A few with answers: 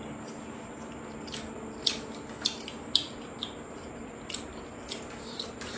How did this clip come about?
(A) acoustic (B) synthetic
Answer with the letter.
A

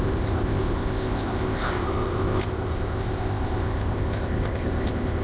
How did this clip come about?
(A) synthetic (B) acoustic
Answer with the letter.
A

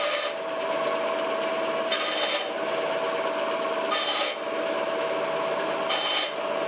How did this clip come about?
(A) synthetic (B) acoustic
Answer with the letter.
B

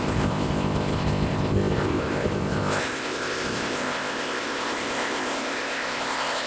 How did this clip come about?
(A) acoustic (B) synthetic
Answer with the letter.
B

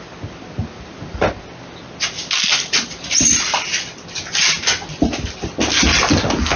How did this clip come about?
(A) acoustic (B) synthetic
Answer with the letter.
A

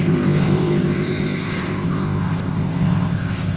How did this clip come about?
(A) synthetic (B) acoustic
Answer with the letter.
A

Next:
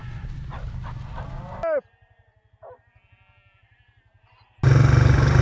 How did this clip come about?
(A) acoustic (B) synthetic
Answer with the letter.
A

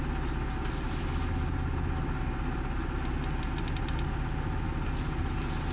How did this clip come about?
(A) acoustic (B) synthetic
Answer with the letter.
A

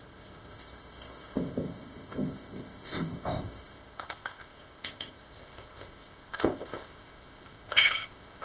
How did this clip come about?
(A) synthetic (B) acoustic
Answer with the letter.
A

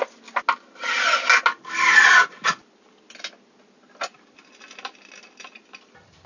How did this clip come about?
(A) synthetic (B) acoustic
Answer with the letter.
B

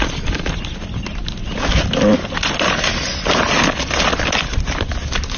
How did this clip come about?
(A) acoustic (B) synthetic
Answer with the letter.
A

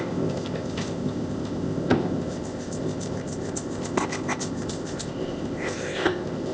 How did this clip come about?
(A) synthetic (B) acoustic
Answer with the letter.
A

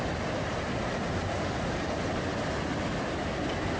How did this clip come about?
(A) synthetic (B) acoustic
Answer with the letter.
B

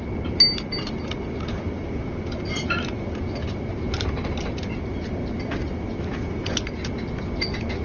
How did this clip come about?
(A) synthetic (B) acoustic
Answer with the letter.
B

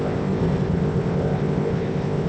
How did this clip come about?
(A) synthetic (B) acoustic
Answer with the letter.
A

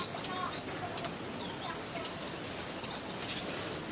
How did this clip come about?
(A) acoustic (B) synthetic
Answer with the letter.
A